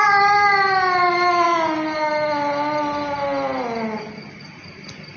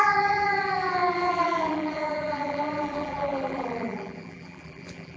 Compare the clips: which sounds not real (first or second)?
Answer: second